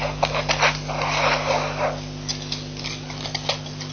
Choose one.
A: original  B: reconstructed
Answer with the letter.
A